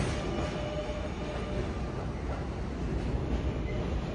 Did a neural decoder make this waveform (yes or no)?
no